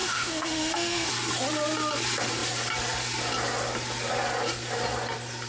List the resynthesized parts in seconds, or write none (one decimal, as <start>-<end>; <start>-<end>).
0.0-1.1